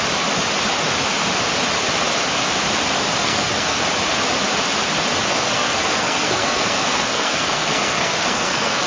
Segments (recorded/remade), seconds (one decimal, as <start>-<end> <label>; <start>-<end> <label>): 0.0-3.2 recorded; 3.2-3.8 remade; 3.8-5.3 recorded; 5.3-8.9 remade